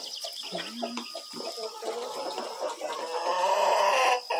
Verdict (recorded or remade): recorded